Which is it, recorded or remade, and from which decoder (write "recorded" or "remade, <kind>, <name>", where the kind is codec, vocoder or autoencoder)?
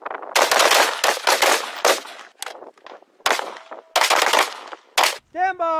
recorded